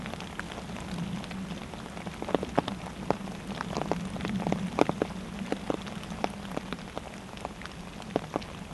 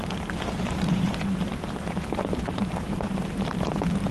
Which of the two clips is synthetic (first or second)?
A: second